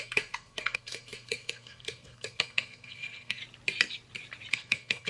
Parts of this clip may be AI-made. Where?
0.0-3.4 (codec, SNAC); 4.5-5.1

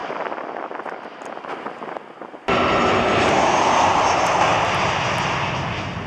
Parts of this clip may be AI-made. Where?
none

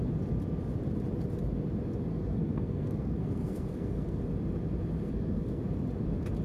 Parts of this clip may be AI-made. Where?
2.1-4.2 (codec, SNAC); 5.0-5.6

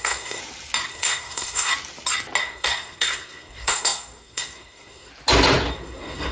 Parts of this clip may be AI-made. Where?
0.0-0.4 (codec, SNAC); 0.9-1.7; 2.4-5.1; 5.7-6.3

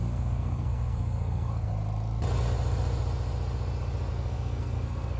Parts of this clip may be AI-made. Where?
0.0-1.7 (codec, SNAC); 4.1-5.2

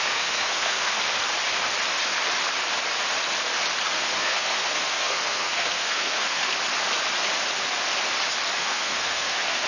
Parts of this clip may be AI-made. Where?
0.0-1.0 (codec, SNAC); 4.2-6.5; 8.6-9.7

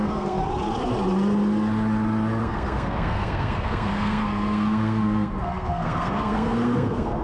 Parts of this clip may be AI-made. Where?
0.0-0.4 (codec, SNAC); 2.4-7.2

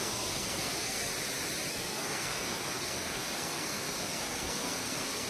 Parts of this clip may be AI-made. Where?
0.0-1.1 (codec, SNAC); 1.7-5.3